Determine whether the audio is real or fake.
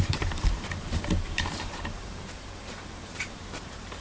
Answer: fake